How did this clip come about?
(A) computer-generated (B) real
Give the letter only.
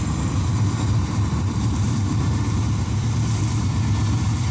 A